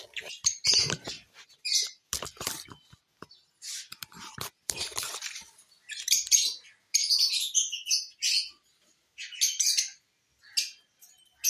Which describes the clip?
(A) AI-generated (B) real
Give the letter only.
B